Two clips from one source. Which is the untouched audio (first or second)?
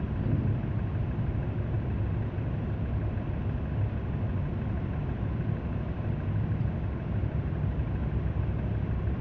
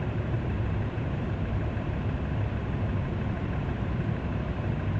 first